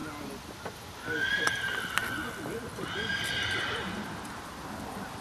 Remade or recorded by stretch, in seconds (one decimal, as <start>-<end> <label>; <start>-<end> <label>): 0.0-5.2 recorded